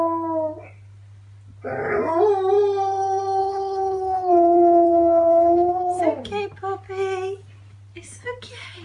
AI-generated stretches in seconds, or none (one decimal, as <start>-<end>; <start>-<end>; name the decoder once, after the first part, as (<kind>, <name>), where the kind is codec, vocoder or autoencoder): 3.4-6.0 (codec, HILCodec)